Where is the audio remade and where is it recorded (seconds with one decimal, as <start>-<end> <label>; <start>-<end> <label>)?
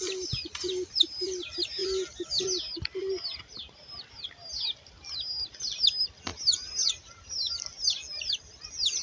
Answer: 0.0-9.0 recorded